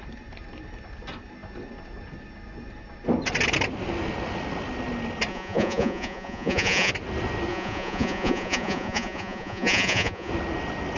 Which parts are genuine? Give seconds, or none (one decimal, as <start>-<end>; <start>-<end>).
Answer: 0.0-5.3; 6.9-7.5; 10.3-11.0